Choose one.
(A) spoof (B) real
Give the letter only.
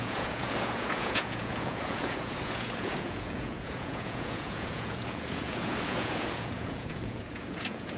A